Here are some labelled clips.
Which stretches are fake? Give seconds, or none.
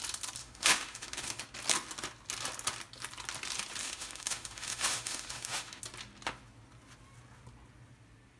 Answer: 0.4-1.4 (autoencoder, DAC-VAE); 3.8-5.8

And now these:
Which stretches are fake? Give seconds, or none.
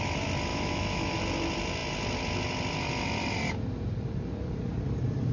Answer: 0.5-1.2 (autoencoder, DAC-VAE)